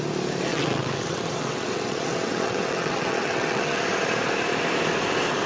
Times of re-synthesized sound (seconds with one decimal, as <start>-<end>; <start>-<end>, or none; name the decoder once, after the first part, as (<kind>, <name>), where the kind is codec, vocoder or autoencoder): 0.5-3.8 (vocoder, WaveNeXt)